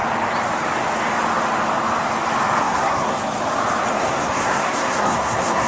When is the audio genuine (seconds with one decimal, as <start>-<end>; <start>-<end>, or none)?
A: 0.0-2.6; 3.2-3.9